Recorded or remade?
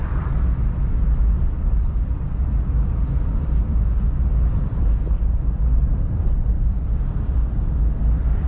remade